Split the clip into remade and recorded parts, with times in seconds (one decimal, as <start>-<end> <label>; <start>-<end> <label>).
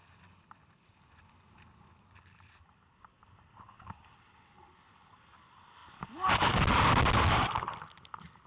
0.0-8.5 recorded